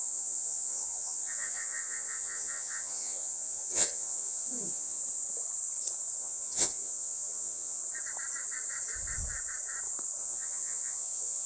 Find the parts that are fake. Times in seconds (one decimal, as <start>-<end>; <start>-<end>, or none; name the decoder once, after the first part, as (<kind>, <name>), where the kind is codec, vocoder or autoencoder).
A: 0.0-5.0 (vocoder, Vocos); 6.2-7.8; 10.2-11.5